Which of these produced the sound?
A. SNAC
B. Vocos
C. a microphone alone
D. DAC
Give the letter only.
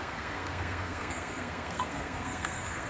A